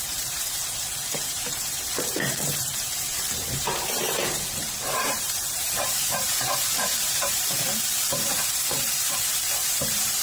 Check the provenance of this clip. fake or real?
fake